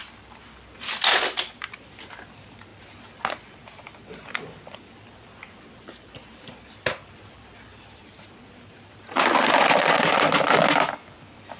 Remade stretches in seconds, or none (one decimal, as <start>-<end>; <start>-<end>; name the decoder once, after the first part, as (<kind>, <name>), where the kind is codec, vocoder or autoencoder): 7.7-9.8 (vocoder, BigVGAN v2)